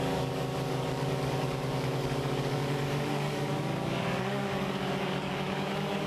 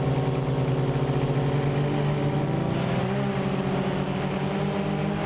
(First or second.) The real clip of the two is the second